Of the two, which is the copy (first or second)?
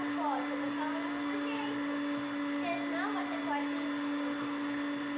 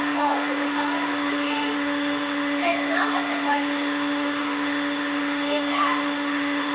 second